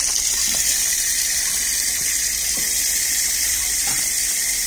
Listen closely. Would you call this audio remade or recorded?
remade